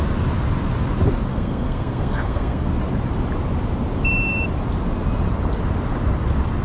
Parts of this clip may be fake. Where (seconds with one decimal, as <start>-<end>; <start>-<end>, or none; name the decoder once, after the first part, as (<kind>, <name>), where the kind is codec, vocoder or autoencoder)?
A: 1.3-2.7 (codec, SNAC)